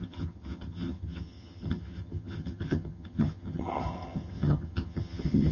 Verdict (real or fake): fake